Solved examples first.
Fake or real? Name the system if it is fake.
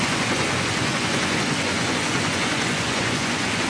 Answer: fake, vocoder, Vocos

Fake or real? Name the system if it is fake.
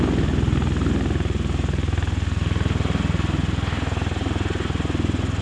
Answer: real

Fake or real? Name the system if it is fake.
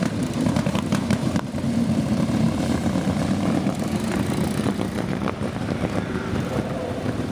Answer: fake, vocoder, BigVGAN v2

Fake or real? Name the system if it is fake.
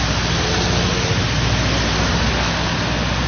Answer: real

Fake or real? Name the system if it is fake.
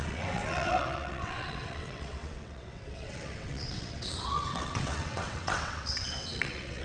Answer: fake, vocoder, WaveNeXt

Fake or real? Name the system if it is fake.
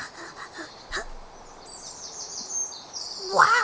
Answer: real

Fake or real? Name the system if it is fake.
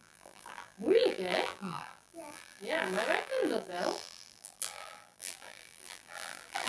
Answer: fake, vocoder, BigVGAN v2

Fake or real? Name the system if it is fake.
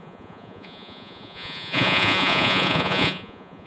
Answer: fake, vocoder, Vocos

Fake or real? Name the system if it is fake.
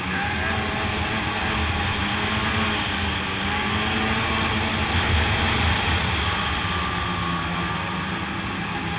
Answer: real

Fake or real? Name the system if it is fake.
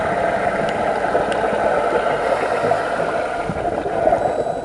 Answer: real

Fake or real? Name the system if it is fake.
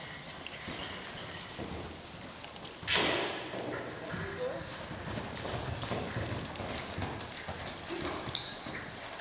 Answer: real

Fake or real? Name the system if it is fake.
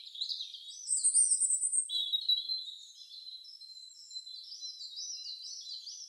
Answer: real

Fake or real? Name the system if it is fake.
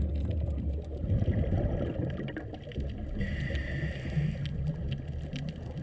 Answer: real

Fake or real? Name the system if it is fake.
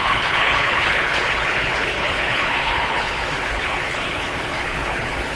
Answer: fake, codec, HILCodec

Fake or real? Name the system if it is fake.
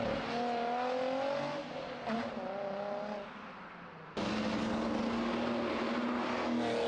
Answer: real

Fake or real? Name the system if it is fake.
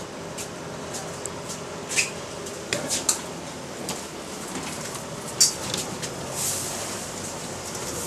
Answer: real